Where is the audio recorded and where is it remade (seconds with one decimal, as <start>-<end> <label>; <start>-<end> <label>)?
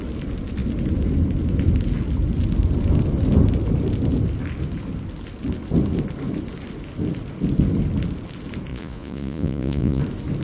0.0-8.7 recorded; 8.7-10.0 remade; 10.0-10.4 recorded